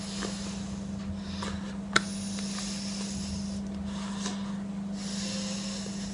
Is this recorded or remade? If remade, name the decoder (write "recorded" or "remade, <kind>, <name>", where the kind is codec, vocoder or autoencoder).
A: recorded